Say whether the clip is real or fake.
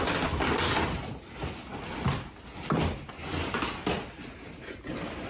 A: real